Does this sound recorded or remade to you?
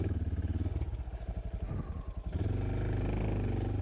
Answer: recorded